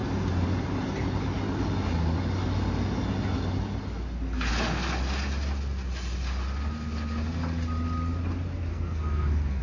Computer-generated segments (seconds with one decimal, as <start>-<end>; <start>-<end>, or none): 8.7-9.6